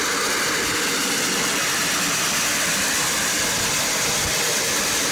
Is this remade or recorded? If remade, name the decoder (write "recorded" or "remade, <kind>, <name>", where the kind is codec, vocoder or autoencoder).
recorded